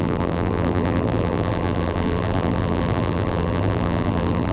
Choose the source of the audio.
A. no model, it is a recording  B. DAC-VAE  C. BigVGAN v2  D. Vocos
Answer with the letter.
C